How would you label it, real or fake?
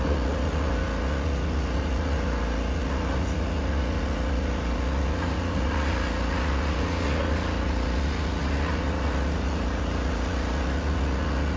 fake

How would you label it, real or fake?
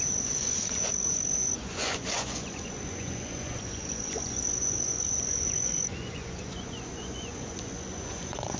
fake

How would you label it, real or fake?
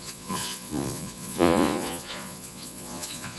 fake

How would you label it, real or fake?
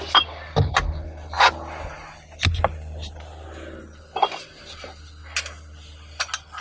real